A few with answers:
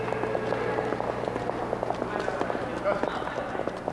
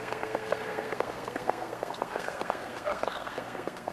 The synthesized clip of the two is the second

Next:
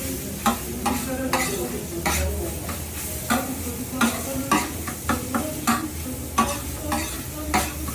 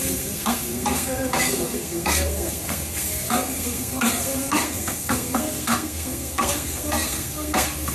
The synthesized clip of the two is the second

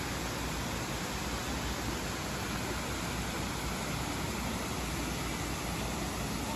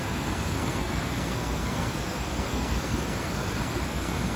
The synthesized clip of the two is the second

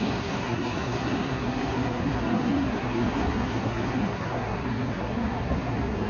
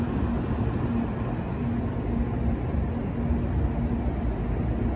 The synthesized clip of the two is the first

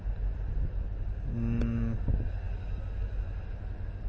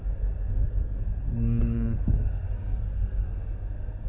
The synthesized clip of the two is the second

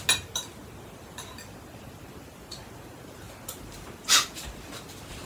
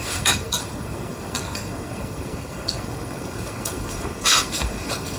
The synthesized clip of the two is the second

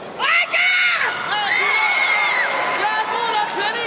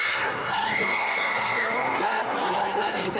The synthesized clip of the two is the second